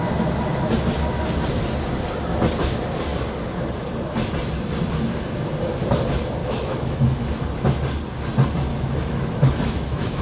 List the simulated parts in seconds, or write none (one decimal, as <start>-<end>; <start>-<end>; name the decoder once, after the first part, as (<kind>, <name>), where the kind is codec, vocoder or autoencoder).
6.4-7.4 (autoencoder, DAC-VAE); 8.7-10.2